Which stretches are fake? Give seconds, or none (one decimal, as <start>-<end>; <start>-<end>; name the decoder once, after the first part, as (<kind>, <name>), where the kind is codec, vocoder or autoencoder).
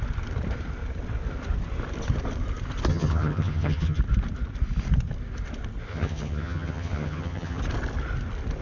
2.9-4.0 (vocoder, HiFi-GAN); 5.9-7.6